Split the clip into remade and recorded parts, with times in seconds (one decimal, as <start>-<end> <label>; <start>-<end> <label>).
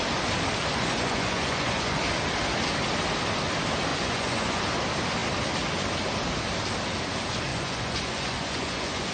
0.0-0.7 recorded; 0.7-2.0 remade; 2.0-3.9 recorded; 3.9-4.6 remade; 4.6-7.5 recorded; 7.5-9.1 remade